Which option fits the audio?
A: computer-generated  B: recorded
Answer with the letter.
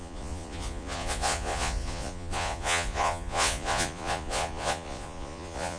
A